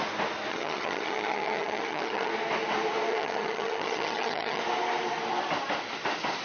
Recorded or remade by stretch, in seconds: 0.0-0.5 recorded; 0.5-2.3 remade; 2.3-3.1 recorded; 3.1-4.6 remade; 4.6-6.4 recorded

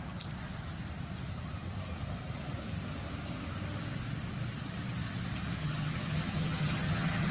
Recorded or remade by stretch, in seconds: 0.0-5.6 recorded; 5.6-7.3 remade

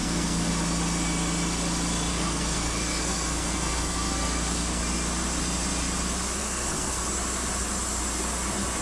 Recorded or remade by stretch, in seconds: 0.0-0.5 remade; 0.5-2.1 recorded; 2.1-4.8 remade; 4.8-6.4 recorded; 6.4-7.0 remade; 7.0-8.8 recorded

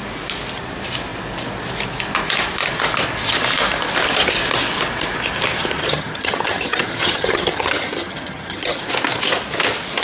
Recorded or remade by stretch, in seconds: 0.0-5.8 recorded; 5.8-8.8 remade; 8.8-10.0 recorded

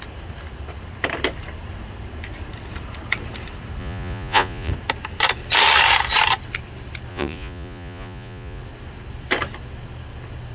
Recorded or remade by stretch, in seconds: 0.0-3.8 recorded; 3.8-4.7 remade; 4.7-7.1 recorded; 7.1-8.6 remade; 8.6-10.5 recorded